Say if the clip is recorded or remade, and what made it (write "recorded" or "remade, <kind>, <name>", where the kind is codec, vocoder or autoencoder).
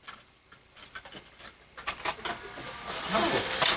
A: recorded